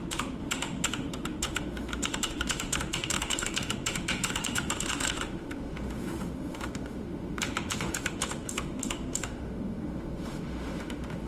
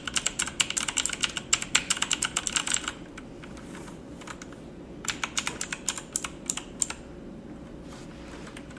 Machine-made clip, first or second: first